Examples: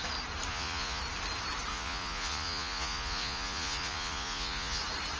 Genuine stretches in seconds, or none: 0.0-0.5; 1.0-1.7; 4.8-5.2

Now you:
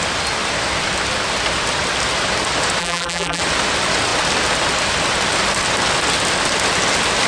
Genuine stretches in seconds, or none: 0.0-2.8; 3.4-7.3

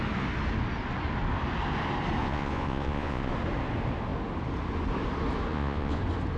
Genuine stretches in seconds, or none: 0.0-2.2; 3.3-5.5; 6.0-6.4

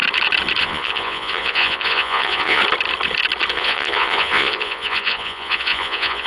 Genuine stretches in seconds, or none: 0.0-0.6; 2.6-3.5

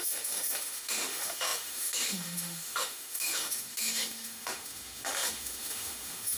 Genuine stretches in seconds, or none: none

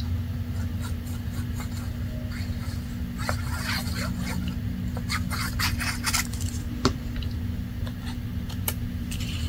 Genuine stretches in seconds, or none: 0.0-9.5

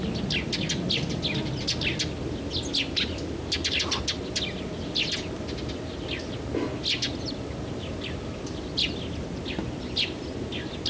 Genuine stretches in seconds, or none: 0.0-10.9

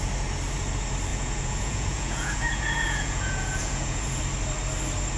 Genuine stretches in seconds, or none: 0.0-1.1; 4.2-5.2